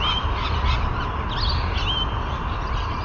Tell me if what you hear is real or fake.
real